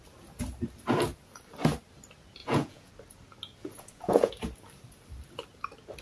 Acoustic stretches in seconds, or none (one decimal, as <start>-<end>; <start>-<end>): 0.0-2.4; 2.9-3.6; 4.3-6.0